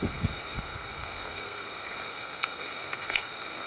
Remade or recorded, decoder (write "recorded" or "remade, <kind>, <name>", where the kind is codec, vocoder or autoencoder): remade, codec, SNAC